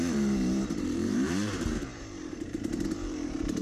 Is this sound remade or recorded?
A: remade